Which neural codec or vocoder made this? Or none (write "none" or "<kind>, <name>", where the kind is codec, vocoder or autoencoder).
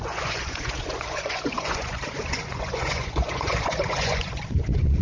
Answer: vocoder, Vocos